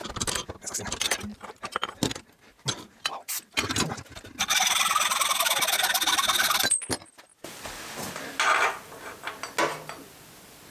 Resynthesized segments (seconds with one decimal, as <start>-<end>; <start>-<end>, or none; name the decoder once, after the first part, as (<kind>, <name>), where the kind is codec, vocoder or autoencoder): none